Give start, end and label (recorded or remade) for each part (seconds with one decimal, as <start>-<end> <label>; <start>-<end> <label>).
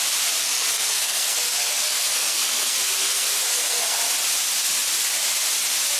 0.0-0.4 recorded; 0.4-4.0 remade; 4.0-6.0 recorded